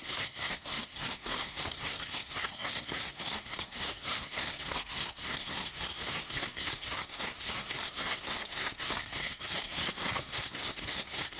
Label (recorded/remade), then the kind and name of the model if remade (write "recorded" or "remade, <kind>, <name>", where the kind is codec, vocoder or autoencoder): remade, codec, SNAC